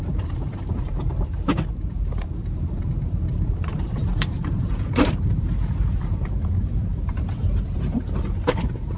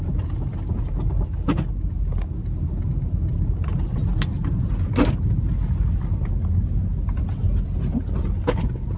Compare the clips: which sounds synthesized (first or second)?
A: first